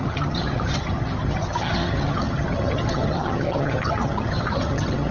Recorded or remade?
remade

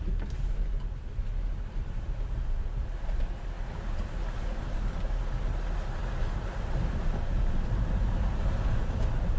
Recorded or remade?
recorded